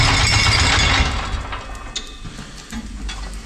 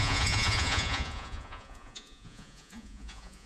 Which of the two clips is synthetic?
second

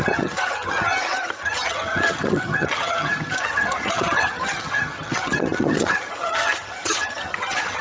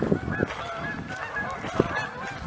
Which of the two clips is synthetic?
first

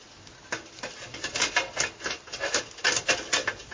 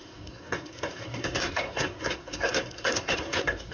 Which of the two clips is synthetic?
second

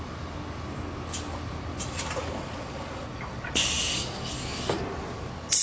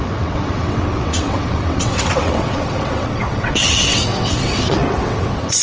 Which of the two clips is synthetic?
second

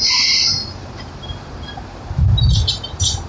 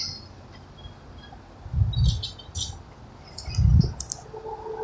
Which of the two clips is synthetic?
first